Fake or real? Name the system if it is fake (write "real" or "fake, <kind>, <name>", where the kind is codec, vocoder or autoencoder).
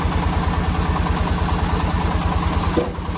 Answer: real